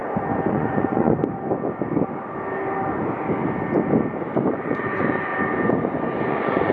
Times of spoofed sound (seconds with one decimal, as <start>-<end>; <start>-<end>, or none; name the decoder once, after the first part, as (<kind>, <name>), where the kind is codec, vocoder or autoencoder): 0.5-1.2 (vocoder, Vocos); 4.5-5.3; 6.3-6.7

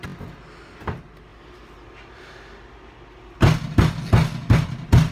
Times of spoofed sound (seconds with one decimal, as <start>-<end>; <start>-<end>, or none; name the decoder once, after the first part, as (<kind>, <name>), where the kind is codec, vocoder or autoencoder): none

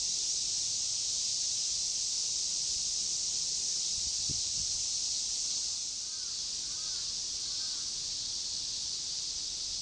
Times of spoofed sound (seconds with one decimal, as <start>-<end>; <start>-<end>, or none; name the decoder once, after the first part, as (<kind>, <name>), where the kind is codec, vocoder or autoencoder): none

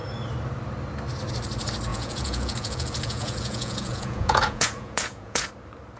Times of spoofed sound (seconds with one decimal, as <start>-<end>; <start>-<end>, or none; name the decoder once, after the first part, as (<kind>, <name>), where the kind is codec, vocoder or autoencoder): 1.9-5.5 (vocoder, Vocos)

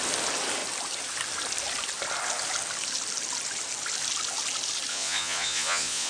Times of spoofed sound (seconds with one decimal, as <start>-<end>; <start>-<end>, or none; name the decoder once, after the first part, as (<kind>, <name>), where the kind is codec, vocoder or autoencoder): 4.9-6.1 (vocoder, Vocos)